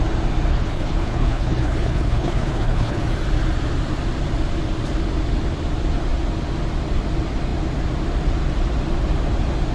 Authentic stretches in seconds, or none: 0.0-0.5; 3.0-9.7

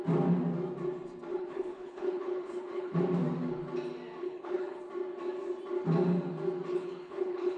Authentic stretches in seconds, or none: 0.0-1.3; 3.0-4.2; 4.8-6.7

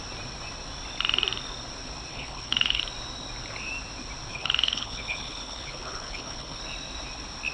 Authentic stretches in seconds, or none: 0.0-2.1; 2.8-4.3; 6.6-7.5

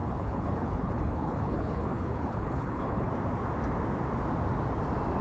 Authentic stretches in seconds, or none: 3.1-5.2